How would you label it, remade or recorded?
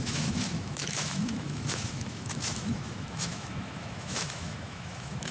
remade